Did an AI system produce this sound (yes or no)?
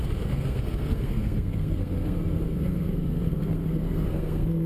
yes